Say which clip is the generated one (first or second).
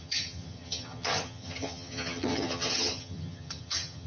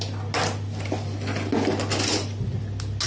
first